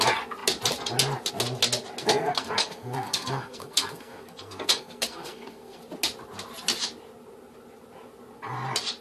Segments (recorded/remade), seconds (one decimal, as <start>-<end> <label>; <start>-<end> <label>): 0.0-2.0 recorded; 2.0-5.8 remade; 5.8-9.0 recorded